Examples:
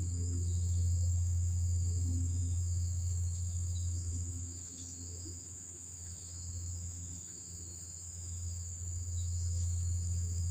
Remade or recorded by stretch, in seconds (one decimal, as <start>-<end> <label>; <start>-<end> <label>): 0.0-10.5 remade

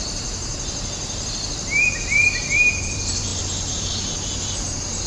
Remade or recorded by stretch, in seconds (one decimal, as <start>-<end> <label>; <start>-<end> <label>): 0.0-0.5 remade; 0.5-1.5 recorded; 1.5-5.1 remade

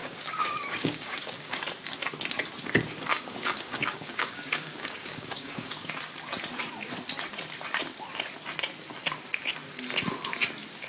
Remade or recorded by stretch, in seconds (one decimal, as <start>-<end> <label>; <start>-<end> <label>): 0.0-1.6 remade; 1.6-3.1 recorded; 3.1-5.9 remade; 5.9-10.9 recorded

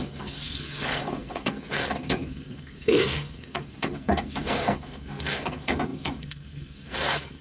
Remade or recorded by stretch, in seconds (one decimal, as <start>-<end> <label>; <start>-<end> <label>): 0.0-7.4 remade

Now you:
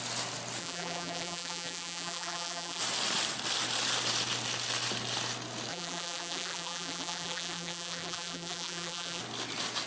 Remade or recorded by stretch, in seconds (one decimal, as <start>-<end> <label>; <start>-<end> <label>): 0.0-0.6 recorded; 0.6-2.8 remade; 2.8-5.7 recorded; 5.7-9.2 remade; 9.2-9.9 recorded

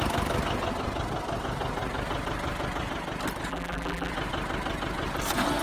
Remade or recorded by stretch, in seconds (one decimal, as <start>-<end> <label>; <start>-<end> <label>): 0.0-3.5 recorded; 3.5-4.1 remade; 4.1-5.6 recorded

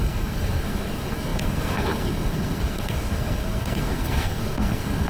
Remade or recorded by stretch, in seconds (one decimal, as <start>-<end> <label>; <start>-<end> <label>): 0.0-5.1 remade

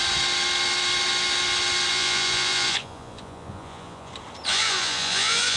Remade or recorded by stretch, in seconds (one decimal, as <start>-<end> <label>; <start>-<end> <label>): 0.0-1.9 recorded; 1.9-4.1 remade; 4.1-4.5 recorded; 4.5-5.6 remade